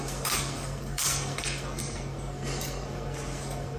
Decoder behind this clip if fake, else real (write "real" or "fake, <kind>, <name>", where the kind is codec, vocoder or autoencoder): fake, codec, SNAC